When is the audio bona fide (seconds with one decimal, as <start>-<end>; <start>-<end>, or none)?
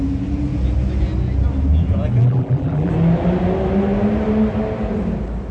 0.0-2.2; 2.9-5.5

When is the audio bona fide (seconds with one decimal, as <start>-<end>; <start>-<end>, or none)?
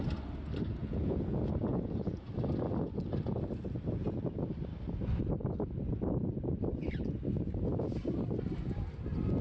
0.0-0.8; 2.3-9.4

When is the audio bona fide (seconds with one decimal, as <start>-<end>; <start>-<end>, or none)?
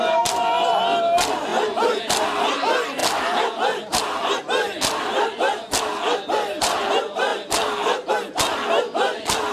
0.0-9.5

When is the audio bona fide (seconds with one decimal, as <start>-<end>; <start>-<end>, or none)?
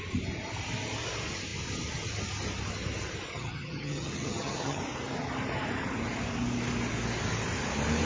0.0-3.3; 4.8-8.1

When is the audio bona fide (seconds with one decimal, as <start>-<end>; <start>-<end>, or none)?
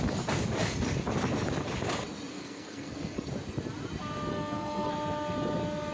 0.0-2.3; 3.3-4.3; 4.9-5.9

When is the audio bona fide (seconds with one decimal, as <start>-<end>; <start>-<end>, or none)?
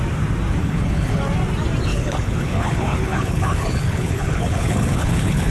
0.0-0.6; 1.2-1.9